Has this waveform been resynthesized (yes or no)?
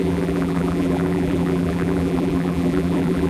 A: yes